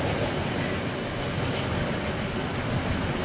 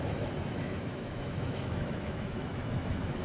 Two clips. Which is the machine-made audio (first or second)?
second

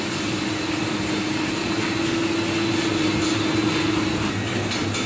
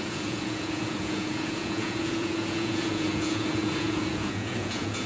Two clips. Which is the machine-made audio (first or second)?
second